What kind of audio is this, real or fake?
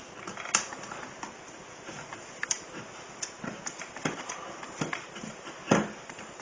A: real